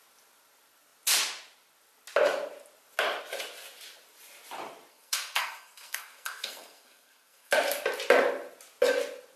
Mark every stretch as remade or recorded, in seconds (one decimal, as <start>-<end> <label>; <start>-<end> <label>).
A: 0.0-4.9 recorded; 4.9-7.5 remade; 7.5-9.4 recorded